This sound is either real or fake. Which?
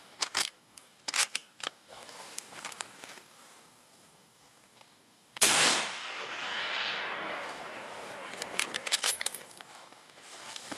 fake